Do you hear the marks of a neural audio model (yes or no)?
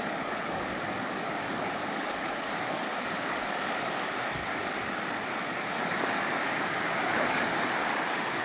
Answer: yes